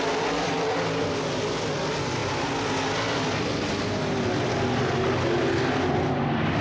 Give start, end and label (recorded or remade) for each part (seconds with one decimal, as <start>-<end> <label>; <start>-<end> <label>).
0.0-6.6 recorded